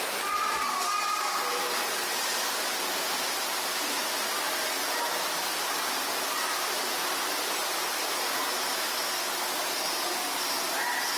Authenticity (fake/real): real